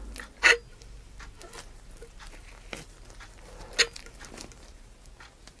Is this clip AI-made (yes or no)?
no